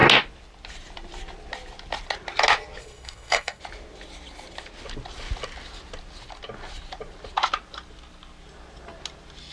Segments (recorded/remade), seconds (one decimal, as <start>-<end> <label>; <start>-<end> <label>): 0.0-2.8 recorded; 2.8-3.6 remade; 3.6-9.5 recorded